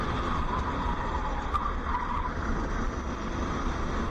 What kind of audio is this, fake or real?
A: real